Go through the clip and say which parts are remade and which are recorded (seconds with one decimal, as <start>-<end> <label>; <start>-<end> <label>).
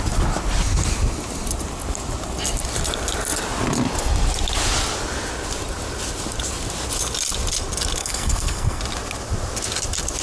0.0-8.0 recorded; 8.0-8.8 remade; 8.8-10.2 recorded